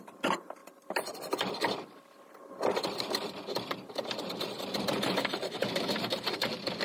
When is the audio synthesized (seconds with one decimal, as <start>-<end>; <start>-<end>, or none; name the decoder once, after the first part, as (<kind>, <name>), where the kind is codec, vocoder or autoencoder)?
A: 0.0-0.6 (vocoder, BigVGAN v2); 3.0-6.8